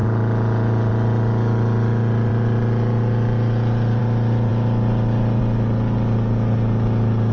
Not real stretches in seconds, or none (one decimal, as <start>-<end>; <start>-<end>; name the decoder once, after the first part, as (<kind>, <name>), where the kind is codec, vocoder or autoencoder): none